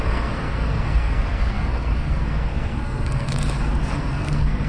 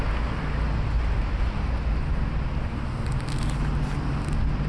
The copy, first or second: first